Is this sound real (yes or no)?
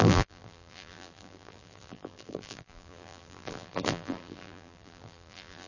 no